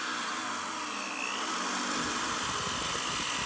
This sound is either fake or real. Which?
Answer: real